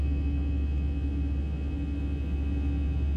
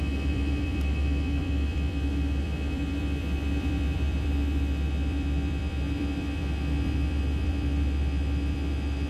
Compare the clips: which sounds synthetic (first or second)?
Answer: second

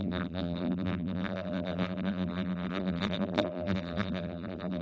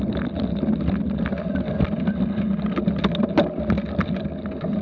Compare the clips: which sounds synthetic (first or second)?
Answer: first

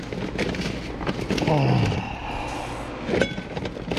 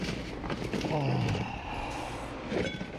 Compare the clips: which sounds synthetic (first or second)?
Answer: second